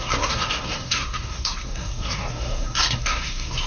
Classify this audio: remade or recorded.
remade